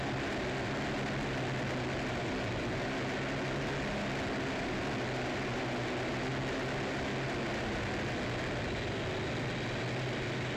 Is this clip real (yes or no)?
yes